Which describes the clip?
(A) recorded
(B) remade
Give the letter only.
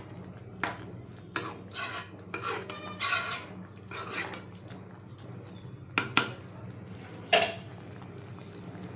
A